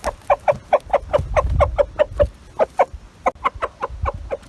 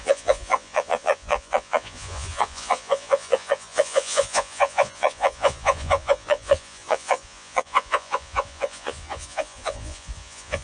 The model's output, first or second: second